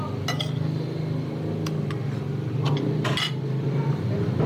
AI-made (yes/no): no